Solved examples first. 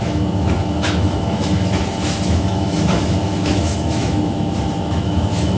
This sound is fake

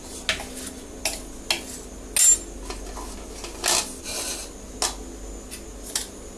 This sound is real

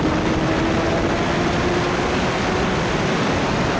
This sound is real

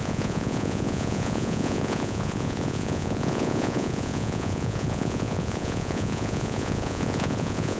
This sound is fake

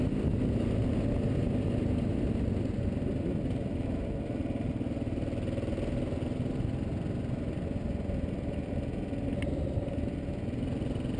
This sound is real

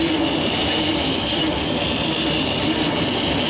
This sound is fake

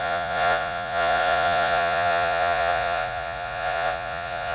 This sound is fake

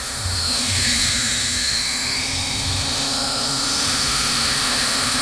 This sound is fake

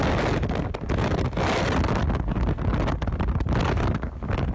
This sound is real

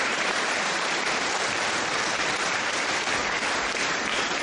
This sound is fake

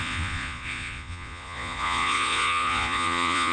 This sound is fake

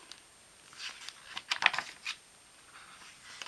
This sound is real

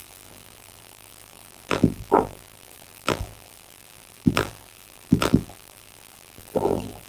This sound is fake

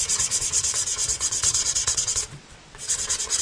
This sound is fake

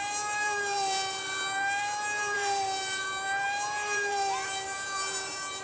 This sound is fake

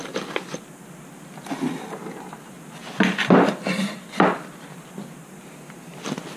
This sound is real